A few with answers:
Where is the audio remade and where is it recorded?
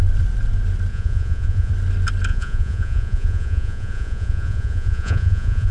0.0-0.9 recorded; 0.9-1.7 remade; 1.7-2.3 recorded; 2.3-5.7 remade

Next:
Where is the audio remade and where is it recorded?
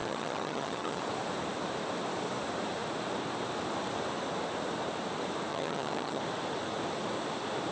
0.0-1.0 remade; 1.0-5.5 recorded; 5.5-6.2 remade; 6.2-7.7 recorded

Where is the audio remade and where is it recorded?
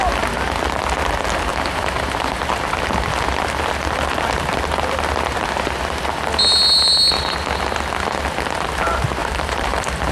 0.0-1.5 recorded; 1.5-2.4 remade; 2.4-9.2 recorded; 9.2-10.1 remade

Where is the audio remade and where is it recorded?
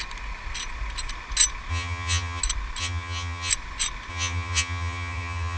0.0-1.7 recorded; 1.7-2.4 remade; 2.4-2.8 recorded; 2.8-3.5 remade; 3.5-4.1 recorded; 4.1-5.6 remade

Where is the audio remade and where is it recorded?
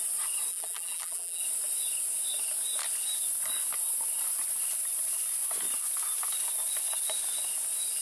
0.0-0.5 recorded; 0.5-1.4 remade; 1.4-8.0 recorded